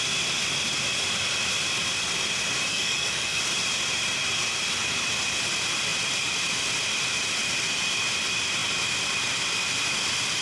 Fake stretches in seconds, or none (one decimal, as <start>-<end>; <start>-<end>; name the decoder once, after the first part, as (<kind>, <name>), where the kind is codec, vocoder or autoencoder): 2.7-3.4 (codec, SNAC)